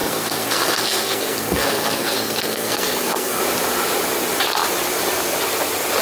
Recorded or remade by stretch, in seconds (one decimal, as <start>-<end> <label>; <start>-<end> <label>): 0.0-3.4 remade; 3.4-6.0 recorded